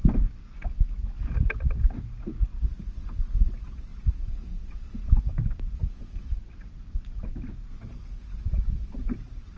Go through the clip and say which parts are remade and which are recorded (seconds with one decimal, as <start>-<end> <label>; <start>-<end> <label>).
0.0-9.6 recorded